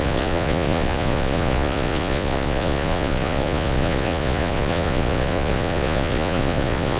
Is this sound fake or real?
fake